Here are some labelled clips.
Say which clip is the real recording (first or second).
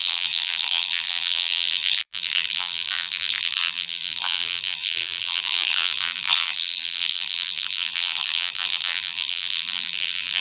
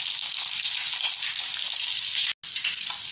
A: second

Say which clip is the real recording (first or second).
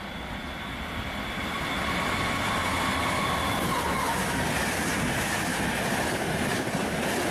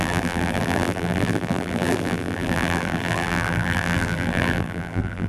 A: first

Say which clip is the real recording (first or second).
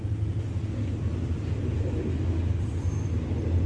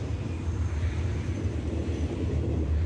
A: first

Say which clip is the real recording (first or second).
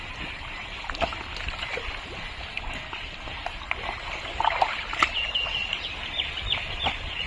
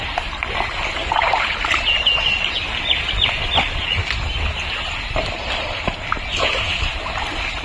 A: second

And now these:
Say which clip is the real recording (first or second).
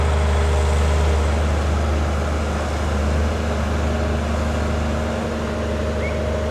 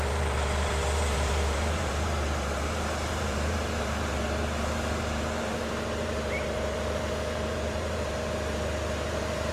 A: first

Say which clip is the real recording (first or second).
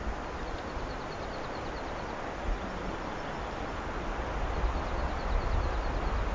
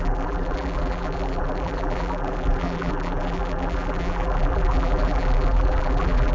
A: first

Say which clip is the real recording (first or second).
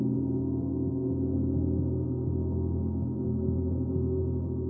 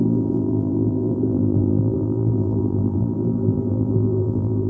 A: first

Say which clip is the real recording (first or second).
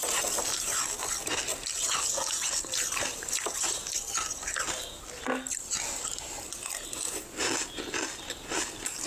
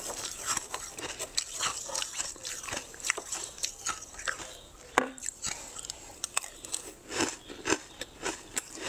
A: first